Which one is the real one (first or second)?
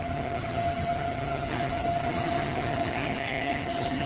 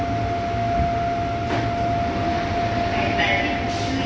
second